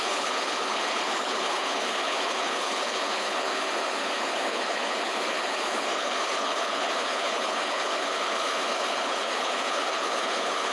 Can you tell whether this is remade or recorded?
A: remade